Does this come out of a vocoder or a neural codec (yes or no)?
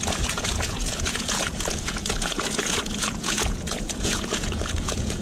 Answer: yes